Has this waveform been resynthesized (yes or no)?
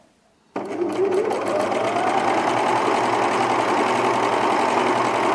no